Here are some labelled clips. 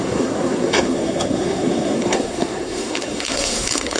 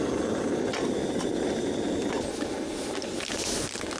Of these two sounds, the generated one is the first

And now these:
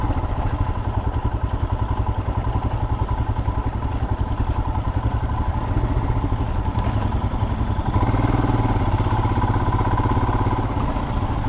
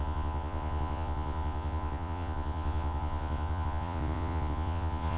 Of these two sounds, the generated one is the second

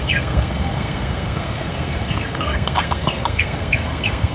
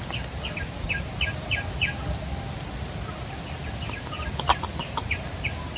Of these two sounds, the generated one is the first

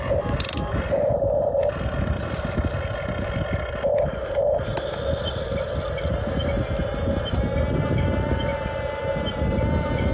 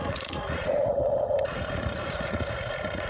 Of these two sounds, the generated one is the second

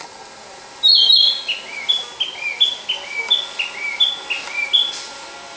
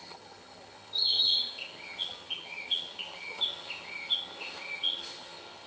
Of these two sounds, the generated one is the second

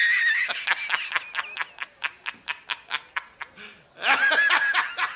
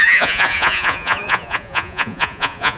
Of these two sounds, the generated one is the second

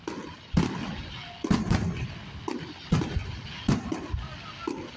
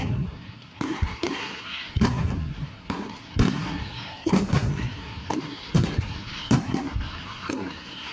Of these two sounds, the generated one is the second